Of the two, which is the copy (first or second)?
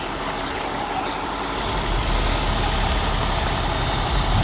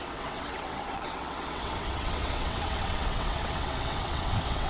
second